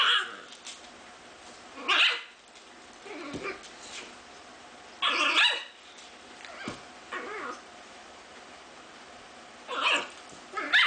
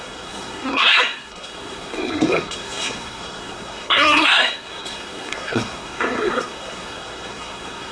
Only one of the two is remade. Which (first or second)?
second